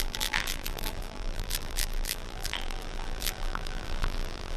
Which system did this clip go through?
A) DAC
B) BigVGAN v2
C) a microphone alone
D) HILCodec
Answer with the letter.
B